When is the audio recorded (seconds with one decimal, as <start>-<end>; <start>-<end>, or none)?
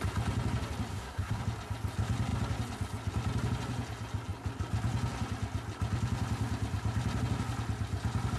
0.0-0.9; 1.4-8.4